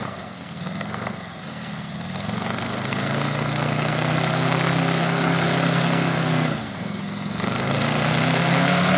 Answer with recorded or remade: remade